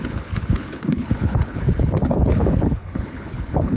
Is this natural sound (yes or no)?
no